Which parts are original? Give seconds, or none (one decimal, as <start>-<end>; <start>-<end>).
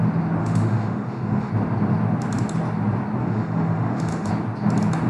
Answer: 0.0-0.4; 1.5-3.2; 4.3-5.1